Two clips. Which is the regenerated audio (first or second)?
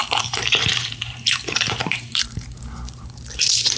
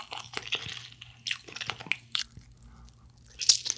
first